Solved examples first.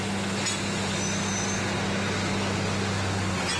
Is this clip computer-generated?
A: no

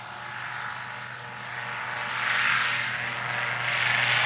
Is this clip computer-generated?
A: no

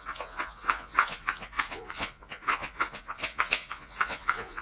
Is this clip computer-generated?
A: yes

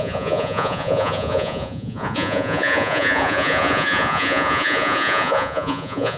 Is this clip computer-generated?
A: yes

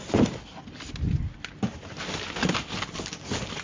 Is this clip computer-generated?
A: no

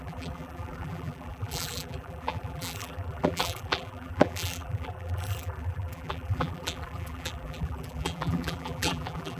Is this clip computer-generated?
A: yes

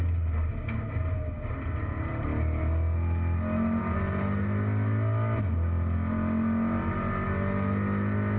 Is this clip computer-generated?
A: no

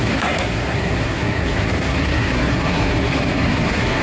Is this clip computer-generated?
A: yes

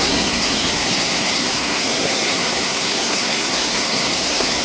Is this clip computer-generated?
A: yes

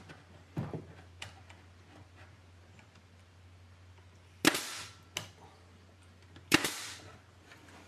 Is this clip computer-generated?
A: no